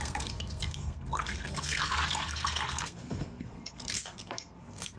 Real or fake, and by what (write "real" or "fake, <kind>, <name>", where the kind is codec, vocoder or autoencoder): fake, codec, SNAC